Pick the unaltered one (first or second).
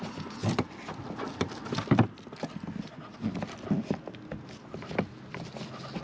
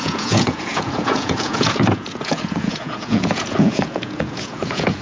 first